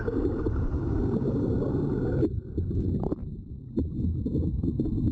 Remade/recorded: remade